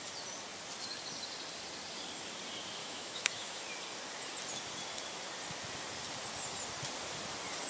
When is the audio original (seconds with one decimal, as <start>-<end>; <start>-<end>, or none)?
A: 0.0-2.8; 3.6-7.7